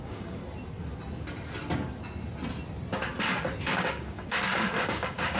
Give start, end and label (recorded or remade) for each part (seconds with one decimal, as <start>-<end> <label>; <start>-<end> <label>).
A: 0.0-0.4 remade; 0.4-3.6 recorded; 3.6-5.4 remade